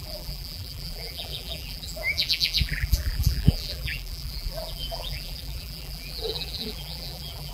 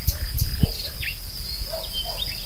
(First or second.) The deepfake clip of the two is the first